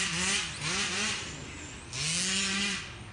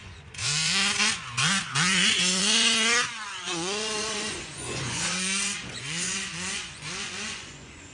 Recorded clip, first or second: first